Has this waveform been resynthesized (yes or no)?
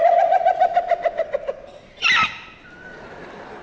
no